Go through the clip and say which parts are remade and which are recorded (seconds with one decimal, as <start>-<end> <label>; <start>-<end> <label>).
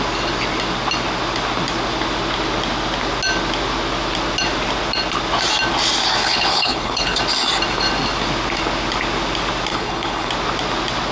0.0-6.2 recorded; 6.2-7.2 remade; 7.2-9.7 recorded; 9.7-10.3 remade; 10.3-11.1 recorded